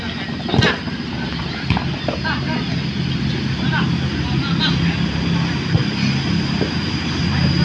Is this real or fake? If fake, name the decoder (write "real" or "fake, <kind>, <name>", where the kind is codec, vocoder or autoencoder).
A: real